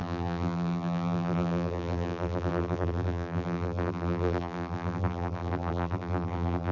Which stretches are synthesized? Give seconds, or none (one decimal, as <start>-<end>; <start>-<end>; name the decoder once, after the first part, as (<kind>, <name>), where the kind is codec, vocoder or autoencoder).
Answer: 0.0-6.7 (vocoder, BigVGAN v2)